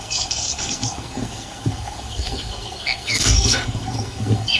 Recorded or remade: remade